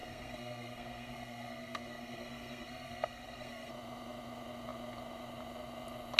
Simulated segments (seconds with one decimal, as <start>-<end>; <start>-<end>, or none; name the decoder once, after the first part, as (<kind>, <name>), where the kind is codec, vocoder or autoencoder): 0.0-3.7 (codec, SNAC)